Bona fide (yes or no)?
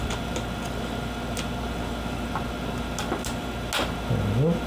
yes